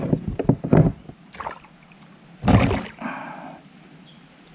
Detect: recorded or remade recorded